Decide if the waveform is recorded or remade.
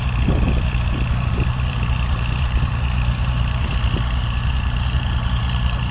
remade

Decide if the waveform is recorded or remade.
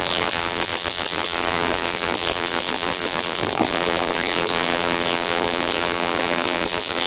remade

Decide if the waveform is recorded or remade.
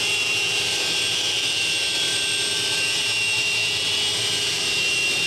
remade